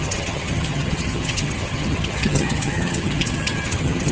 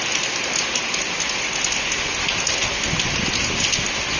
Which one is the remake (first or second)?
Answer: first